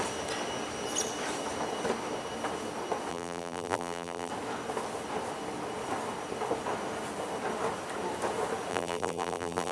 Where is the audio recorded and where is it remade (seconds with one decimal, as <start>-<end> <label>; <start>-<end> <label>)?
0.0-3.1 recorded; 3.1-4.3 remade; 4.3-8.7 recorded; 8.7-9.7 remade